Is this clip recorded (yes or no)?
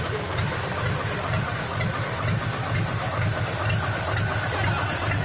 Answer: yes